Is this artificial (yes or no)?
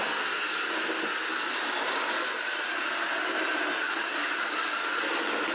no